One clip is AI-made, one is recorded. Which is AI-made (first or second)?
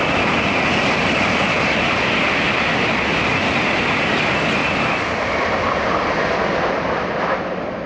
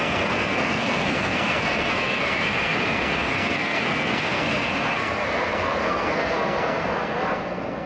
second